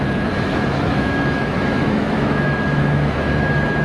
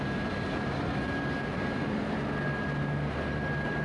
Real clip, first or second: second